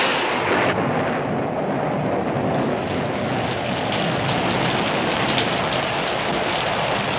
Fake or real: real